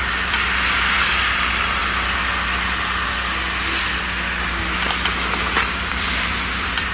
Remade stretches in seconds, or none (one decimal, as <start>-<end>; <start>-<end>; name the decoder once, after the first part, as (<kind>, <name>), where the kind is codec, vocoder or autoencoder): 0.0-1.8 (vocoder, BigVGAN v2); 5.9-6.9